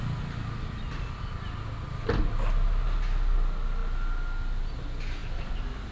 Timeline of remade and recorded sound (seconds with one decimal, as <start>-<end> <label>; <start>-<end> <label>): 0.0-5.9 recorded